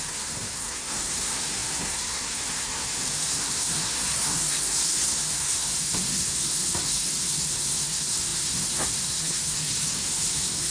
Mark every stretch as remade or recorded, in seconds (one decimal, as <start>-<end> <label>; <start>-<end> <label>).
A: 0.0-10.7 remade